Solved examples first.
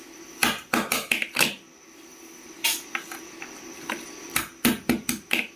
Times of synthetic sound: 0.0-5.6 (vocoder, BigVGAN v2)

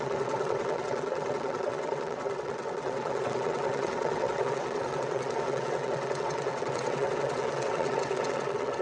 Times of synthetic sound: 0.0-8.8 (vocoder, WaveNeXt)

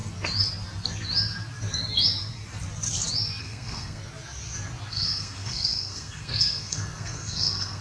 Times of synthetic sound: 3.4-4.0 (codec, SNAC); 4.9-7.8

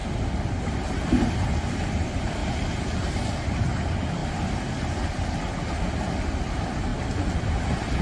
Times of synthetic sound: 0.7-2.4 (vocoder, BigVGAN v2); 3.0-4.2; 6.5-8.0

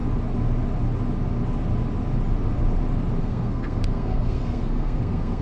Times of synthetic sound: 3.2-5.4 (codec, SNAC)

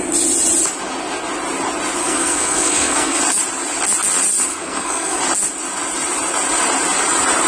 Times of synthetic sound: 2.0-3.2 (codec, SNAC); 4.5-5.2

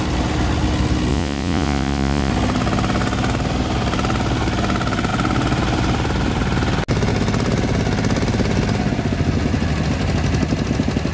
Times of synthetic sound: 1.1-2.3 (vocoder, Vocos)